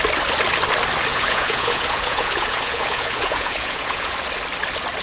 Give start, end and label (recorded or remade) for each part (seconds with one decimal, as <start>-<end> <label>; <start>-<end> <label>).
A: 0.0-1.1 recorded; 1.1-4.1 remade; 4.1-5.0 recorded